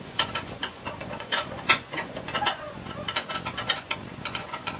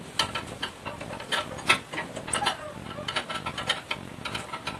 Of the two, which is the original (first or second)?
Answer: second